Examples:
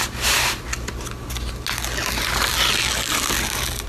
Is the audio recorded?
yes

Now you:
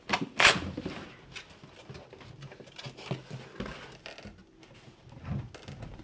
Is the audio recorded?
yes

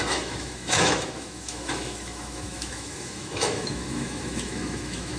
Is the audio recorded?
no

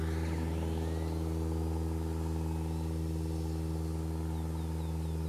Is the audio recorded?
yes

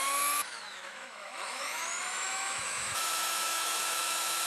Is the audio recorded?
no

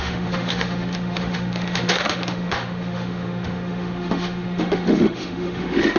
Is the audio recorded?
no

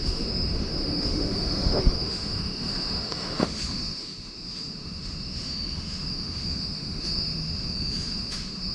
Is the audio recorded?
no